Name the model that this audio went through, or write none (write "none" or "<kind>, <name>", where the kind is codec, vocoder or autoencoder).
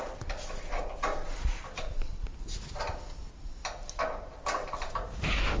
none